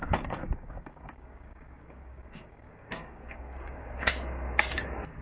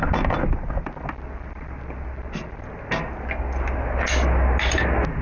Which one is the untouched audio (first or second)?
second